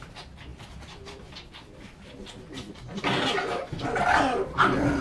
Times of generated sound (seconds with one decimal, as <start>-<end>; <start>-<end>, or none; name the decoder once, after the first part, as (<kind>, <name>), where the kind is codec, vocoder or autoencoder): none